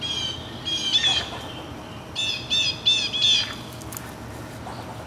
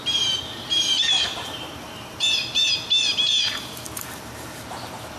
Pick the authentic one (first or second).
first